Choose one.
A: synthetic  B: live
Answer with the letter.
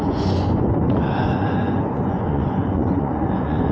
A